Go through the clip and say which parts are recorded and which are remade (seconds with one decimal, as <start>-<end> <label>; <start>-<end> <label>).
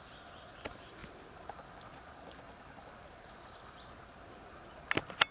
0.0-5.3 recorded